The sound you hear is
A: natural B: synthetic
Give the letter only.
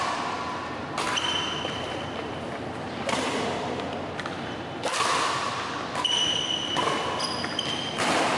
B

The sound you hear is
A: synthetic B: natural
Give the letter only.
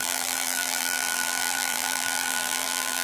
A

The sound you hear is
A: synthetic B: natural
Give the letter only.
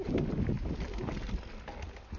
B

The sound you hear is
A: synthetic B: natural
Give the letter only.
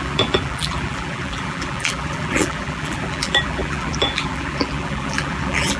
A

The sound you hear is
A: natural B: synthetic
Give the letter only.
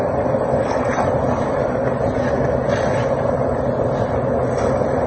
A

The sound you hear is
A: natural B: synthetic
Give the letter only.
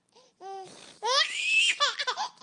A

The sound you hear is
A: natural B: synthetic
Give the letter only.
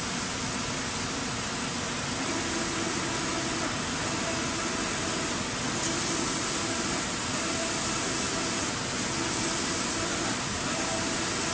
A